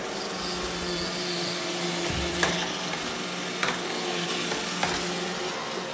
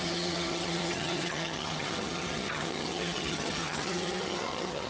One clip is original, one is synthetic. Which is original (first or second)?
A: first